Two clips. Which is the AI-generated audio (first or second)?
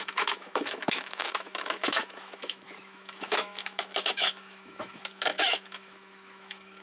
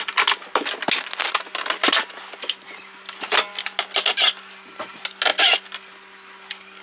first